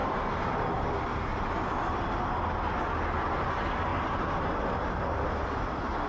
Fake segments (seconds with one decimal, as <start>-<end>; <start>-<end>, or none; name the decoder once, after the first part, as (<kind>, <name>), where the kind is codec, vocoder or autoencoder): 0.0-2.8 (vocoder, BigVGAN v2); 3.9-5.5